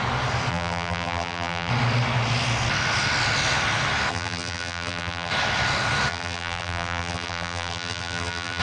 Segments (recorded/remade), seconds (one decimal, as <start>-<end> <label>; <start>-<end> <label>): 0.0-0.5 recorded; 0.5-1.7 remade; 1.7-4.1 recorded; 4.1-5.3 remade; 5.3-6.1 recorded; 6.1-8.6 remade